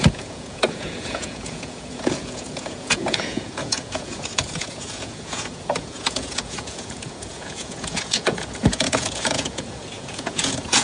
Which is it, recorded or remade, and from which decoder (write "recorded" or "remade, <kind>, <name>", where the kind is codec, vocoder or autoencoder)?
remade, vocoder, Vocos